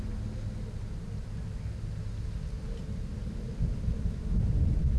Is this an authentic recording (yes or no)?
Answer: yes